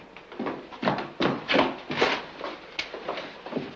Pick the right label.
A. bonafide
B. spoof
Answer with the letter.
A